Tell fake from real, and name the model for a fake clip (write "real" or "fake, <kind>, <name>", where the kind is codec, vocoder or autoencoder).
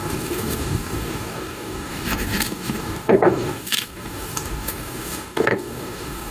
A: fake, codec, DAC